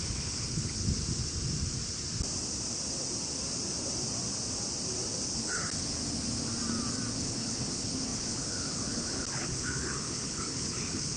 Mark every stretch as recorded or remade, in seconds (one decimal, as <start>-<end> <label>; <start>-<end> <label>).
0.0-0.8 remade; 0.8-5.3 recorded; 5.3-6.0 remade; 6.0-7.2 recorded; 7.2-11.2 remade